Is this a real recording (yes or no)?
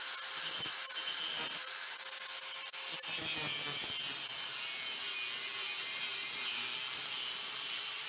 yes